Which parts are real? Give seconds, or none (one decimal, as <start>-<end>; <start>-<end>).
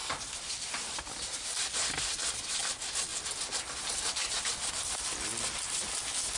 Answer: 3.1-4.1; 5.3-6.4